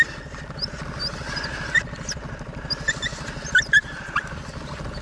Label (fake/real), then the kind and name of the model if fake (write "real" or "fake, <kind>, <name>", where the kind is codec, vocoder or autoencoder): real